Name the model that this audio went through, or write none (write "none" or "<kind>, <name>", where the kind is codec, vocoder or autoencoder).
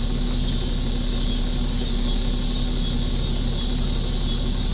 none